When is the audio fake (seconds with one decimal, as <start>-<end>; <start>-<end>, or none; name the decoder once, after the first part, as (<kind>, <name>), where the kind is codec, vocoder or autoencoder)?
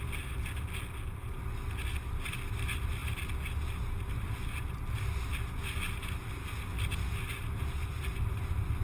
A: none